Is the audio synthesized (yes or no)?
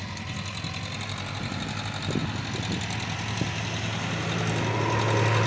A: no